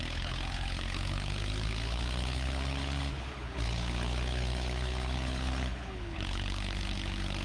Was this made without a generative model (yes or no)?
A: no